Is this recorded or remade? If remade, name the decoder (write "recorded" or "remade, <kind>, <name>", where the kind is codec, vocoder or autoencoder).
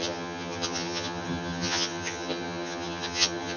remade, vocoder, HiFi-GAN